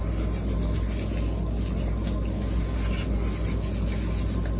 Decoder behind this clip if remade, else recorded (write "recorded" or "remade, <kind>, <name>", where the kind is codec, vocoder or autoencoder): recorded